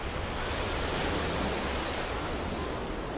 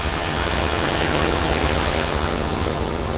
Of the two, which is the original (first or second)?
first